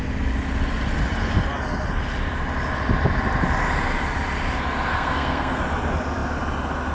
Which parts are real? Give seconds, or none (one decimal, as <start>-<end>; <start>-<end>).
0.0-4.9; 5.6-6.9